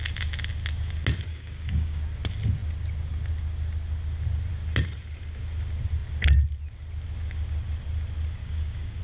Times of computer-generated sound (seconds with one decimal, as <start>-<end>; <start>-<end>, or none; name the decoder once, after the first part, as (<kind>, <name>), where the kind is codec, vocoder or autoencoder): 1.3-2.0 (codec, DAC); 8.4-9.0